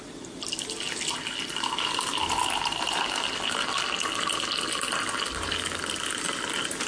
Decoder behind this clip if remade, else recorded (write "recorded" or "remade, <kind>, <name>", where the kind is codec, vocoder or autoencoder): recorded